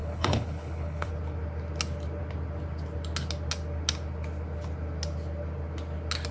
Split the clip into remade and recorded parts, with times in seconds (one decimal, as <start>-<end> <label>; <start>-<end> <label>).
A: 0.0-1.1 remade; 1.1-6.3 recorded

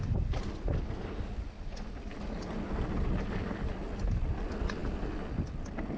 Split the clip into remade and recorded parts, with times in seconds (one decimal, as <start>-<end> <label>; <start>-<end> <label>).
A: 0.0-6.0 recorded